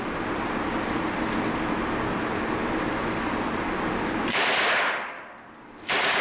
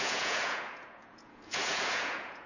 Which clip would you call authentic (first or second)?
first